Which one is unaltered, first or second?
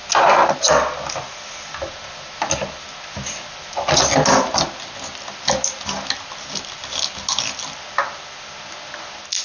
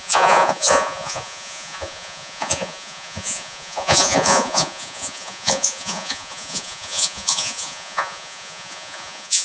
first